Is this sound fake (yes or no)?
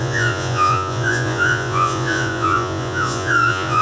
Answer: yes